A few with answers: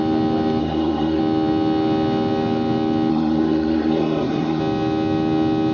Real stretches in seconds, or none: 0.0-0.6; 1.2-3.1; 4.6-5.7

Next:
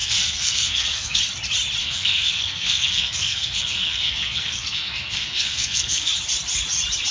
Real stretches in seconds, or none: 1.2-1.8; 6.1-7.1

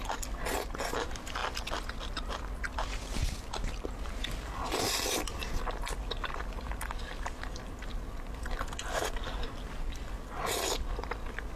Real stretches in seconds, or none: 0.0-11.6

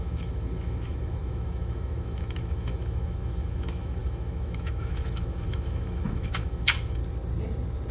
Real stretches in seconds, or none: 7.0-7.9

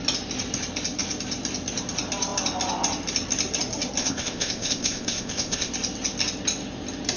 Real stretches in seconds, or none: 0.0-4.0; 5.7-7.2

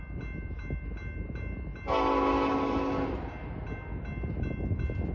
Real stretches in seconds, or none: 0.0-5.1

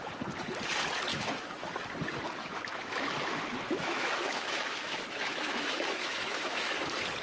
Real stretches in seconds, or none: 0.0-1.1; 1.8-2.4; 6.7-7.2